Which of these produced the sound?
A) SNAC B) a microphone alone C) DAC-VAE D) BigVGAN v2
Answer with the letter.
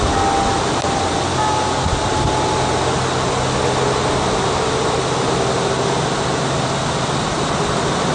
B